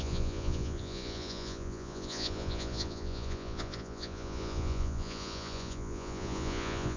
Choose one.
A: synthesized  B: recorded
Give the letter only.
A